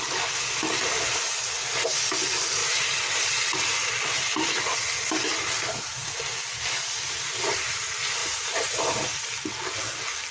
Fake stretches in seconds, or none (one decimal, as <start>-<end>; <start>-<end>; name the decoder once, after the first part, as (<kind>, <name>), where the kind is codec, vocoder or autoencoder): 2.6-6.1 (vocoder, BigVGAN v2); 8.2-10.3